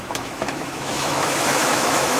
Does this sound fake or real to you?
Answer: fake